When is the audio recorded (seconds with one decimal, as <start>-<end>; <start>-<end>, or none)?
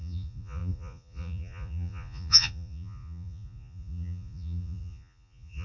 none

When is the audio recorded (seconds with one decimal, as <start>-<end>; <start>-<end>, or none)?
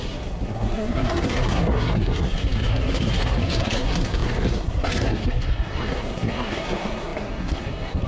none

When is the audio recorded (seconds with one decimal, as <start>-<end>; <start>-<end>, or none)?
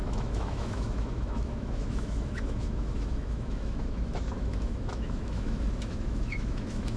none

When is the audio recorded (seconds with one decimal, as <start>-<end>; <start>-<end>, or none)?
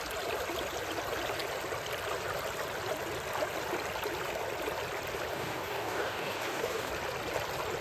0.0-5.3; 6.9-7.8